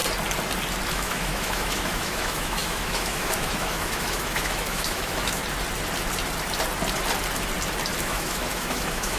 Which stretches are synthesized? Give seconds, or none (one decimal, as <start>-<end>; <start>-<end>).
0.9-5.4; 8.0-9.2